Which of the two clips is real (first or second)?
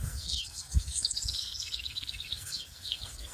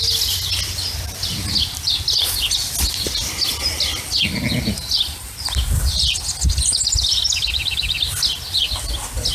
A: second